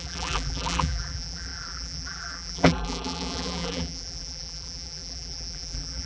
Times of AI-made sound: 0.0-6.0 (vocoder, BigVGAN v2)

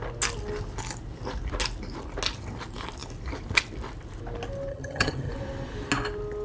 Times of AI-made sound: 4.7-5.3 (vocoder, HiFi-GAN)

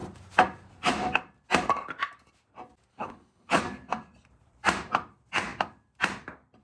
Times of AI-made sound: 2.9-3.6 (codec, HILCodec)